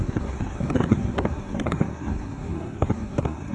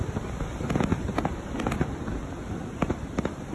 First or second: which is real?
second